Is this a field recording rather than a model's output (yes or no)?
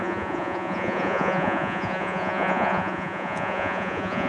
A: no